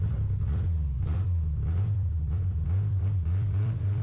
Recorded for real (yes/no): no